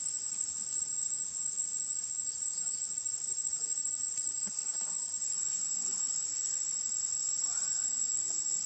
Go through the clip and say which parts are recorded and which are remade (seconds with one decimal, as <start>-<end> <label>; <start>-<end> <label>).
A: 0.0-8.7 recorded